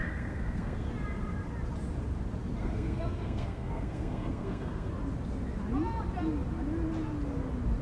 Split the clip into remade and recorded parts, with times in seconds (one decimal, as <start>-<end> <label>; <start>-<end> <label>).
0.0-0.9 remade; 0.9-2.6 recorded; 2.6-4.9 remade; 4.9-7.8 recorded